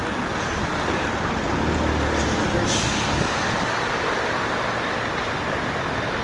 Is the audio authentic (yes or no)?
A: yes